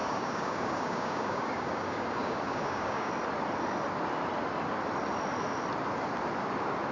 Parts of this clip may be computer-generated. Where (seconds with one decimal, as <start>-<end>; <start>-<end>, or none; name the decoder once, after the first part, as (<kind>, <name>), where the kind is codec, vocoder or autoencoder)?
0.0-3.1 (codec, DAC)